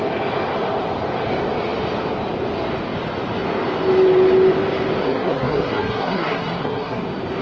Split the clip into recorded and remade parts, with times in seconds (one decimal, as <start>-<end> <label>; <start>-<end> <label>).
0.0-5.0 recorded; 5.0-7.0 remade; 7.0-7.4 recorded